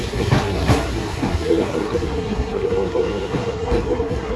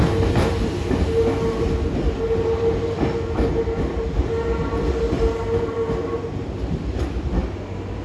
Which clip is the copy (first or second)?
first